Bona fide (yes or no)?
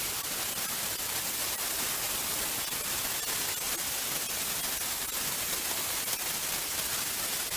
yes